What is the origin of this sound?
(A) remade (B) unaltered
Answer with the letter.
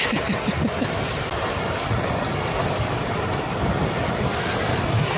B